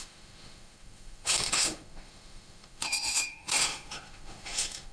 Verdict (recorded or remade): remade